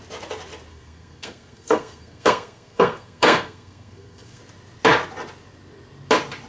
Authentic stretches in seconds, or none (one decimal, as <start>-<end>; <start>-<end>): 0.0-0.7; 4.4-6.5